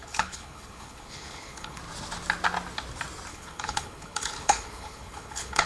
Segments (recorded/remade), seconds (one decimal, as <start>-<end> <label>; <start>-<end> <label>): 0.0-1.8 remade; 1.8-3.3 recorded; 3.3-5.7 remade